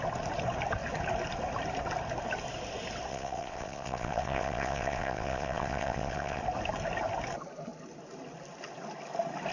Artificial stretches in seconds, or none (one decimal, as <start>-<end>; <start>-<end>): 3.1-6.4